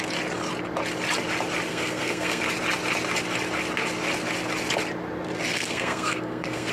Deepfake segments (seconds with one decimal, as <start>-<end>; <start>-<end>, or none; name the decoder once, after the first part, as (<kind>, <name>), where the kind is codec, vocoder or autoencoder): 1.7-2.4 (codec, SNAC); 5.5-6.7